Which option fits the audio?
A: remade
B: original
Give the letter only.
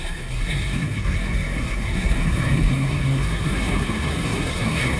A